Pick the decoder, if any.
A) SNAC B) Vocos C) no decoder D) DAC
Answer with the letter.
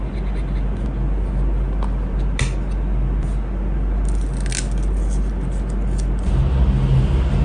C